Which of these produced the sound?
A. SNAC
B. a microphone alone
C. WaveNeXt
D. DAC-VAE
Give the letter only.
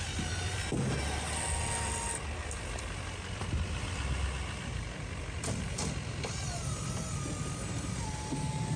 B